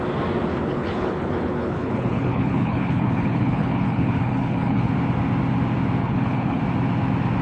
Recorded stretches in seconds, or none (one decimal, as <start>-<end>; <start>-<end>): 0.0-0.5; 4.9-6.0; 6.6-7.4